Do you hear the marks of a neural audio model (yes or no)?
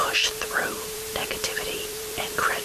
yes